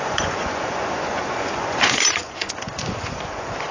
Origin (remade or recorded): remade